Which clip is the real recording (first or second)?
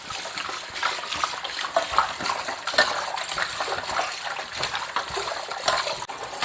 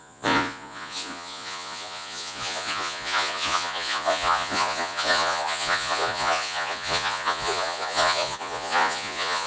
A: first